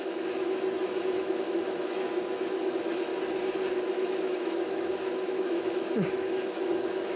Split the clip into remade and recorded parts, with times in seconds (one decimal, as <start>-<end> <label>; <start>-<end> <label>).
0.0-3.1 remade; 3.1-3.8 recorded; 3.8-7.2 remade